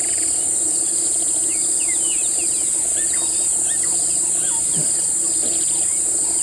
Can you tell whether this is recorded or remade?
recorded